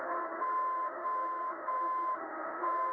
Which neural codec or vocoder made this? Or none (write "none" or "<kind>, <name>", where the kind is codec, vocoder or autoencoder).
autoencoder, DAC-VAE